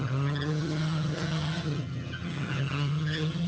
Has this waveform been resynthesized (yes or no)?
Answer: yes